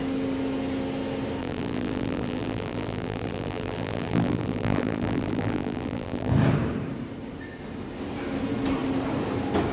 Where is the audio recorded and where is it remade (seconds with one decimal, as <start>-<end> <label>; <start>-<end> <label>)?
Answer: 0.0-1.4 recorded; 1.4-6.3 remade; 6.3-9.7 recorded